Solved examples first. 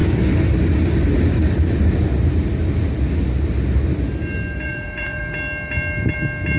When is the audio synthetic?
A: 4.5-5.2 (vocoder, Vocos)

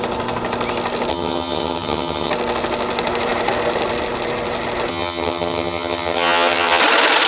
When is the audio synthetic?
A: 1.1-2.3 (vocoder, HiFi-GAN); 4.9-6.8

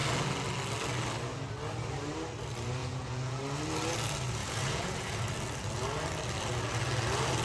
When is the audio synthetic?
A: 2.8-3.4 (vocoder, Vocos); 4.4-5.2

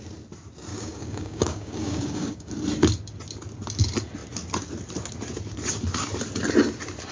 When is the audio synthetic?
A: 0.7-2.5 (codec, DAC)